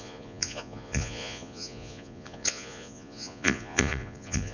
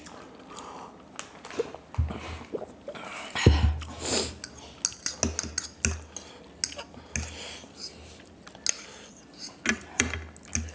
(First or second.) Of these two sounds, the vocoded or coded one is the first